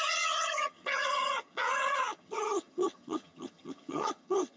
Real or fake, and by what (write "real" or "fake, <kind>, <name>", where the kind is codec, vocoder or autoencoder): fake, vocoder, HiFi-GAN